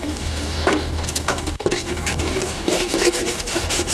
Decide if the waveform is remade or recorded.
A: remade